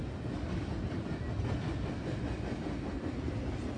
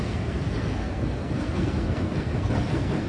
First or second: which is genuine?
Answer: first